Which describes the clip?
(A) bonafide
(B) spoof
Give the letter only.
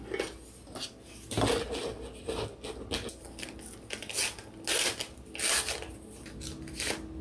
A